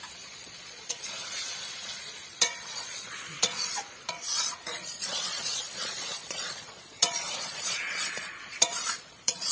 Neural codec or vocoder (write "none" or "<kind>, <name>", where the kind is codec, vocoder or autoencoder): vocoder, Vocos